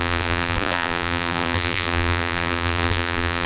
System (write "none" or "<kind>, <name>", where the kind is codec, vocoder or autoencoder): vocoder, BigVGAN v2